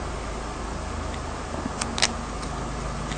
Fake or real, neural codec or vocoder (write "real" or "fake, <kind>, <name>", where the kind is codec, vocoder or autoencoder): real